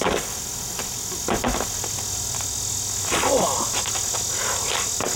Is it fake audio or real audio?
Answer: real